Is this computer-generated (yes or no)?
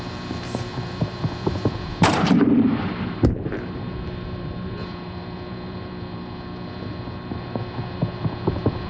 yes